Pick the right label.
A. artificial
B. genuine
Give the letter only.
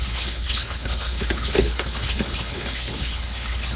A